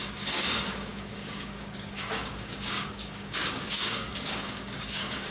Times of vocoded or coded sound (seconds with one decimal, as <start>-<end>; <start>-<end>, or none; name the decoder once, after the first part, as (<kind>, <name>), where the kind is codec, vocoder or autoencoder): 0.0-5.3 (codec, DAC)